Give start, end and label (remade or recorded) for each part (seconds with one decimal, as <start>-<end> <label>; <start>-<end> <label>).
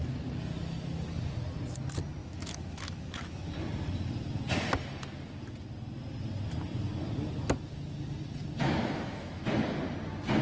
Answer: 0.0-2.2 recorded; 2.2-3.4 remade; 3.4-8.6 recorded; 8.6-9.4 remade; 9.4-10.4 recorded